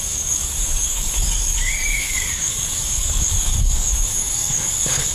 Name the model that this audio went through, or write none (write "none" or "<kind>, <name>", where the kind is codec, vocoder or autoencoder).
codec, DAC